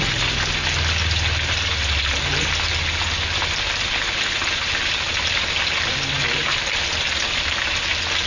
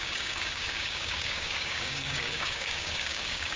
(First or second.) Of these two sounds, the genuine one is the first